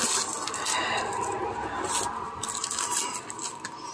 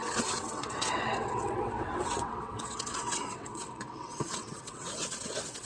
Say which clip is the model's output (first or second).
second